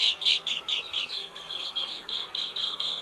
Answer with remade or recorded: remade